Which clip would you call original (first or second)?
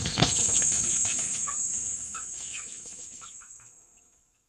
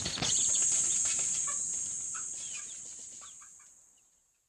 second